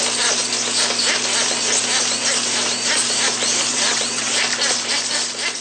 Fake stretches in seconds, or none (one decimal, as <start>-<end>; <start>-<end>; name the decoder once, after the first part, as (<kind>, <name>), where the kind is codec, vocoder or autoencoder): 3.7-4.3 (vocoder, WaveNeXt)